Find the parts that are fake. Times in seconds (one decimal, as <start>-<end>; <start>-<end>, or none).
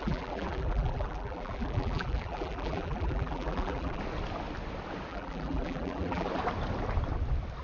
0.0-4.0; 5.1-6.3